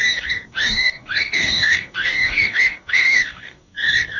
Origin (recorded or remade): remade